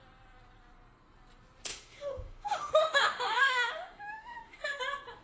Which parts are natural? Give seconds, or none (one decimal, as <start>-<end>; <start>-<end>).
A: 0.0-1.7; 4.8-5.2